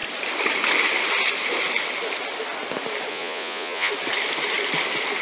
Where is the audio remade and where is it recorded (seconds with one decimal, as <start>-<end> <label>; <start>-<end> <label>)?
0.0-3.1 recorded; 3.1-3.9 remade; 3.9-5.2 recorded